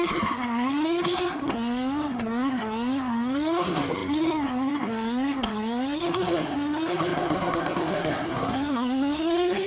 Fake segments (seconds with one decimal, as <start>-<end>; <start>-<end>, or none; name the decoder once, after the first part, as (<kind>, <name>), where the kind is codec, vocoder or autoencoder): 0.0-9.7 (codec, SNAC)